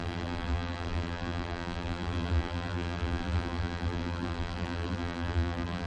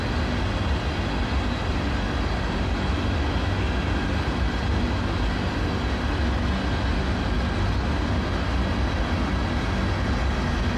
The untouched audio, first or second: second